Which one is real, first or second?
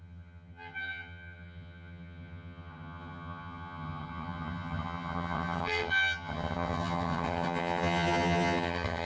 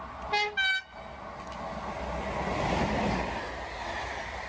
second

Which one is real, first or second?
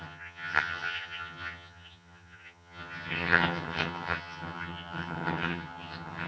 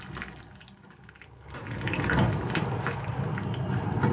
second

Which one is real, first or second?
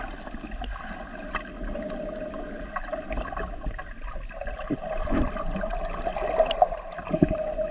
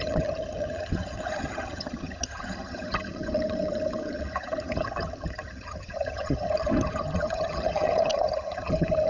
first